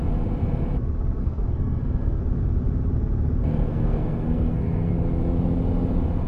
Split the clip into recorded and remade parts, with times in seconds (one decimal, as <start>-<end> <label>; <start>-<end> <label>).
0.0-1.2 recorded; 1.2-2.2 remade; 2.2-3.7 recorded; 3.7-4.9 remade; 4.9-6.3 recorded